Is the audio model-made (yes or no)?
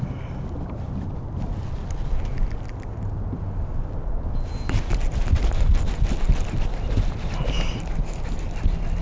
no